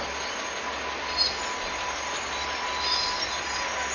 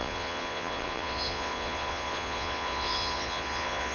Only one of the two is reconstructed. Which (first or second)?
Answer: second